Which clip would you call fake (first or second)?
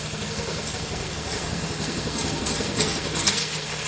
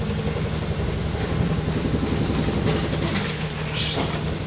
first